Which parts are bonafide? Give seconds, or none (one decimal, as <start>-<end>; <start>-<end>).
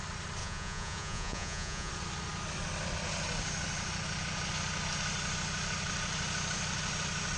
0.0-0.4; 1.9-7.4